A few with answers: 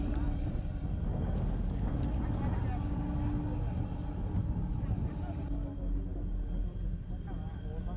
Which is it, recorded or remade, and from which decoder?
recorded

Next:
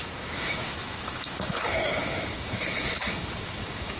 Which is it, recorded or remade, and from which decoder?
remade, autoencoder, DAC-VAE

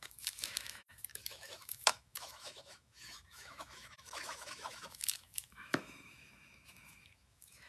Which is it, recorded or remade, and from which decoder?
remade, autoencoder, DAC-VAE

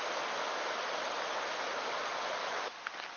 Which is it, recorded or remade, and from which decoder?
recorded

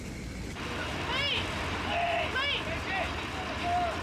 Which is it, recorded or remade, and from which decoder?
recorded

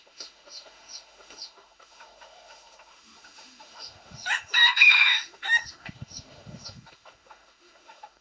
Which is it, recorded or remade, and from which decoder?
remade, autoencoder, DAC-VAE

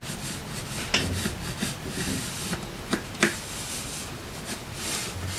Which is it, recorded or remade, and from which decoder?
recorded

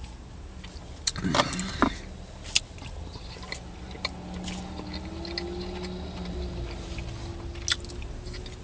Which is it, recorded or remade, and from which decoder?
recorded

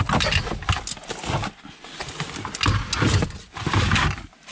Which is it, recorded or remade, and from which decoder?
recorded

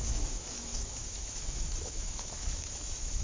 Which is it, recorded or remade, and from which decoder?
remade, autoencoder, DAC-VAE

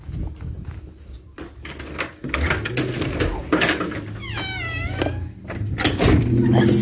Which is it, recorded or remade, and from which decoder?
recorded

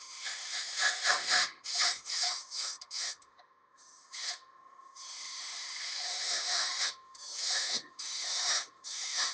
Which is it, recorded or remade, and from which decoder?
remade, autoencoder, DAC-VAE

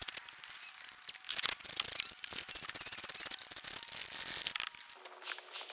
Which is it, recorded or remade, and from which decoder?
recorded